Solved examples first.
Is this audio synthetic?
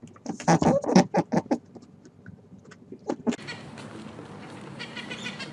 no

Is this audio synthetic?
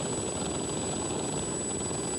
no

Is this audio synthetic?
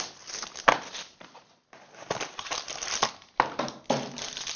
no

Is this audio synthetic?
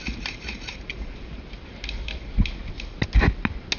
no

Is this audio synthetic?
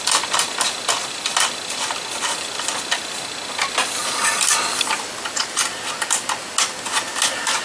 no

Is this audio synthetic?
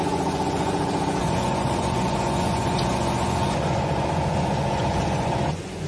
yes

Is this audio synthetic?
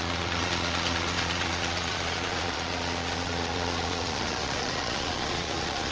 yes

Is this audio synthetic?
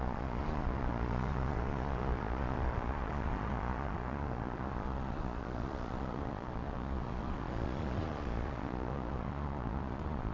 yes